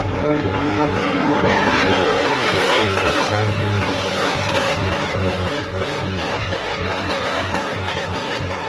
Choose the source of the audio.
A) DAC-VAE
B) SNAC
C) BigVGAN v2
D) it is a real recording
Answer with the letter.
B